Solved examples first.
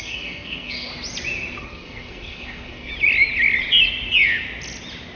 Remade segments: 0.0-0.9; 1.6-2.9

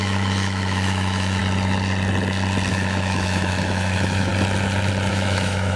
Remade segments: 0.0-1.4; 2.7-4.3; 5.1-5.8

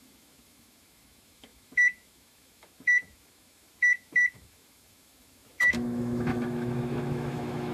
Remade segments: 0.0-7.7